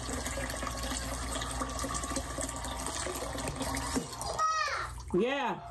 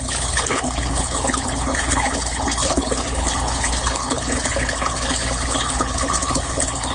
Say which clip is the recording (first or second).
first